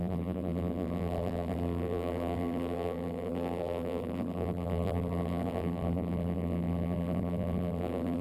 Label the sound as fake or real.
fake